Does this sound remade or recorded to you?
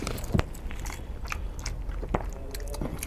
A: recorded